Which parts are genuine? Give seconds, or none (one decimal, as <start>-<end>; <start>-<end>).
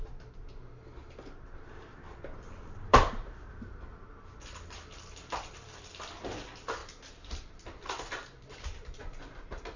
0.0-2.9; 3.5-6.8; 7.3-9.0